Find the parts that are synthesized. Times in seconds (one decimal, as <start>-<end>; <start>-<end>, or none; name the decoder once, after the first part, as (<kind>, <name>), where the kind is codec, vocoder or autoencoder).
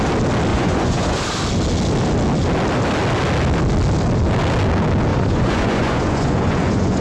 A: 0.5-1.2 (vocoder, Vocos); 5.1-7.0